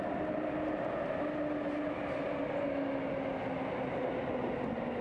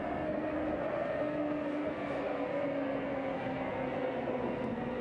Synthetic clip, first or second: second